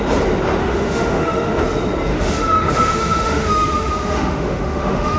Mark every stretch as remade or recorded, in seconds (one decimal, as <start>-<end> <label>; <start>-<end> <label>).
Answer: 0.0-0.6 recorded; 0.6-1.6 remade; 1.6-2.1 recorded; 2.1-5.2 remade